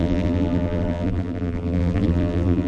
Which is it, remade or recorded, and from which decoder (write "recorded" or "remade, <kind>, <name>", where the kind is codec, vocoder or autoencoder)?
remade, vocoder, BigVGAN v2